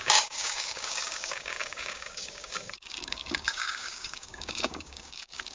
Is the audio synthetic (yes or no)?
yes